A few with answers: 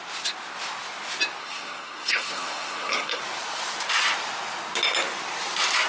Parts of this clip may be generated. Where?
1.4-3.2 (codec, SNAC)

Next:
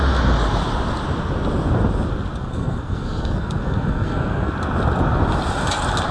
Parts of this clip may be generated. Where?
2.4-4.5 (codec, SNAC)

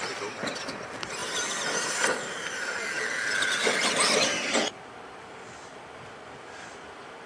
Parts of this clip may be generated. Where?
none

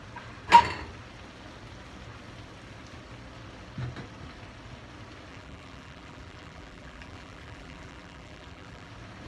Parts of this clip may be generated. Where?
5.3-8.9 (vocoder, BigVGAN v2)

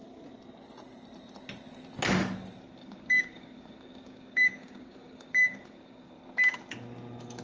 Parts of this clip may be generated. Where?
2.8-6.1 (codec, DAC)

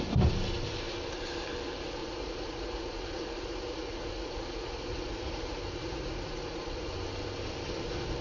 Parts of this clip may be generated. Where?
2.0-6.9 (vocoder, Vocos)

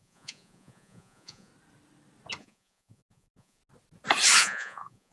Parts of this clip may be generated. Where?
0.0-1.5 (vocoder, Vocos); 2.4-3.6; 4.4-5.1